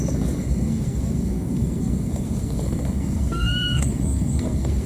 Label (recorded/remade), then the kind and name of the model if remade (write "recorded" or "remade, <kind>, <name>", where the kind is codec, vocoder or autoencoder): remade, codec, SNAC